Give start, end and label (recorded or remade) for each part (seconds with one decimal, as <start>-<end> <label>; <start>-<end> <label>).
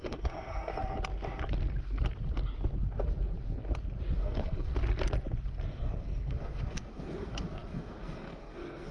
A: 0.0-0.7 remade; 0.7-4.2 recorded; 4.2-4.7 remade; 4.7-5.7 recorded; 5.7-8.9 remade